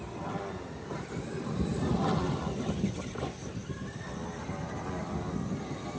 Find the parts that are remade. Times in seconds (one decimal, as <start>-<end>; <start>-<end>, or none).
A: none